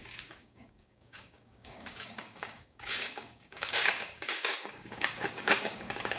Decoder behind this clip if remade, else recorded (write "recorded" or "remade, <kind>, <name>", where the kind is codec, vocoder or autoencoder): remade, codec, DAC